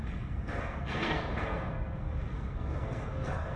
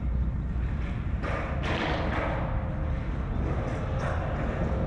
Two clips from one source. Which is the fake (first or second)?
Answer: first